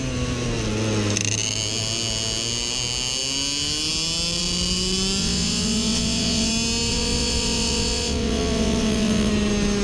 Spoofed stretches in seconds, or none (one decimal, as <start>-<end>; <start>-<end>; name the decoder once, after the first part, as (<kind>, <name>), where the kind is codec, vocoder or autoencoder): 5.2-6.5 (vocoder, WaveNeXt); 6.9-9.3